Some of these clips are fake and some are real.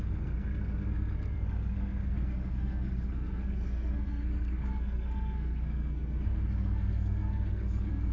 fake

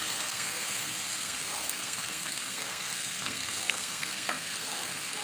fake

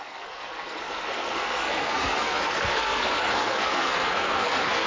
fake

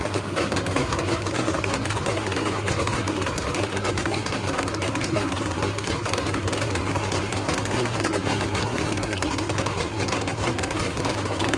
fake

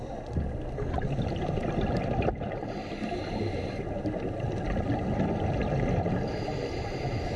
real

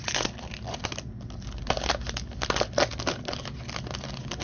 real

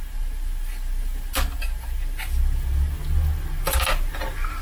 real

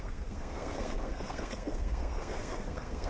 fake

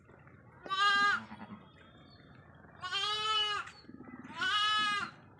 real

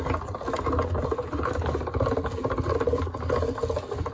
real